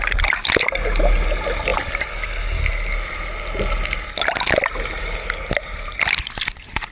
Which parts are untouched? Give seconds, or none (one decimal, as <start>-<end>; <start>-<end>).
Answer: 0.0-6.9